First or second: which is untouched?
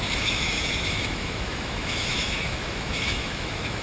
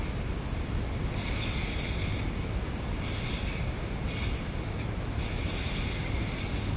second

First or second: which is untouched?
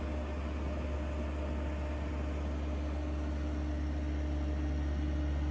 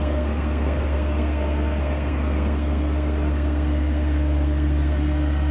first